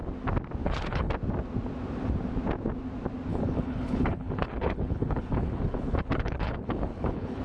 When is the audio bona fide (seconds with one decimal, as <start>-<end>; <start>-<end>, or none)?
0.0-0.6; 1.1-3.3